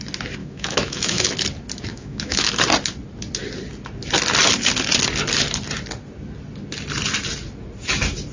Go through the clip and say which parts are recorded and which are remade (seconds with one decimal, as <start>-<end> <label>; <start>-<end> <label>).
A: 0.0-0.4 recorded; 0.4-1.3 remade; 1.3-1.9 recorded; 1.9-2.5 remade; 2.5-8.3 recorded